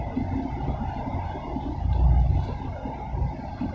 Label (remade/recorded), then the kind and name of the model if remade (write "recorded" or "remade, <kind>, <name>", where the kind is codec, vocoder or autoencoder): recorded